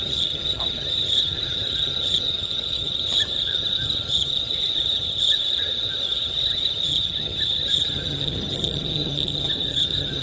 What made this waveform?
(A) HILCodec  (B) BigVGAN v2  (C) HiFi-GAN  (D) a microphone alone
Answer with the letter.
C